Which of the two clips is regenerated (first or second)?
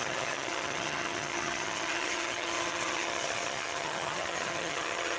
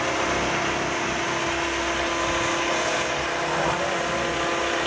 first